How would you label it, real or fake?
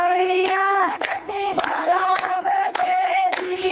fake